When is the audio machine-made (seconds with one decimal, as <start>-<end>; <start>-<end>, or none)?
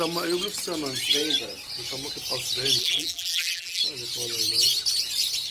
2.8-3.8